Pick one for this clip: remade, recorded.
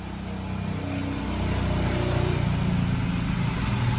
recorded